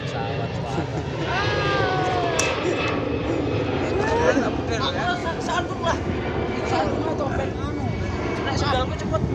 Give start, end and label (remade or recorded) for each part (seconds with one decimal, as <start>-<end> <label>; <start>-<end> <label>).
0.0-0.9 recorded; 0.9-2.9 remade; 2.9-5.2 recorded; 5.2-7.4 remade; 7.4-9.3 recorded